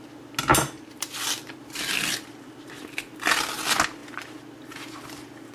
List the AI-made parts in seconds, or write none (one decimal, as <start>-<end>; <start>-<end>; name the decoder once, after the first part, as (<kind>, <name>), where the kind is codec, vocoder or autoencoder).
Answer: 0.5-1.8 (vocoder, BigVGAN v2)